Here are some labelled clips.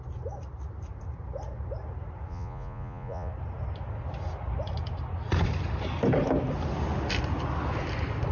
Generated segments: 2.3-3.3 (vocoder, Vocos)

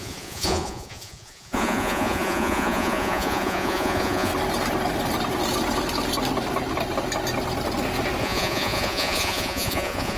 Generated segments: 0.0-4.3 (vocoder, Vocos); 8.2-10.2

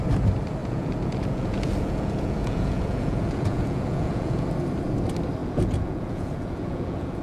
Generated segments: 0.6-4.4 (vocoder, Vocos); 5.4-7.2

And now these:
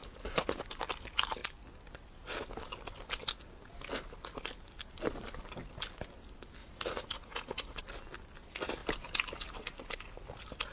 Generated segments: 0.0-0.6 (vocoder, Vocos); 6.6-7.8

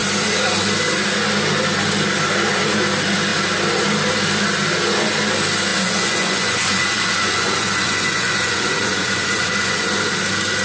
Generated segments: 5.7-10.0 (vocoder, Vocos)